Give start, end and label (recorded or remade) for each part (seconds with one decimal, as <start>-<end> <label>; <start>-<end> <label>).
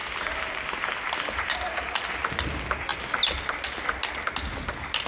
0.0-5.1 recorded